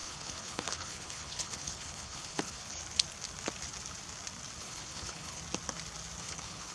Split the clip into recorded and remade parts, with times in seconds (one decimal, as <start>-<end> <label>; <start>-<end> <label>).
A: 0.0-2.8 remade; 2.8-4.6 recorded; 4.6-5.4 remade; 5.4-6.2 recorded; 6.2-6.7 remade